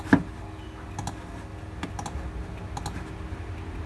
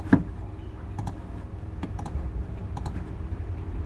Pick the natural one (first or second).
first